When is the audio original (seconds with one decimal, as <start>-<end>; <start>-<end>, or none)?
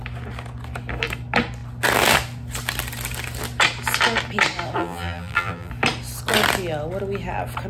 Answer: 0.0-4.8; 5.7-7.7